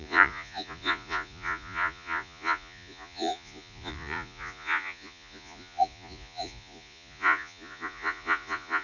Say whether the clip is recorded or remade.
remade